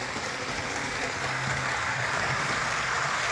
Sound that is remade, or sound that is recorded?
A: remade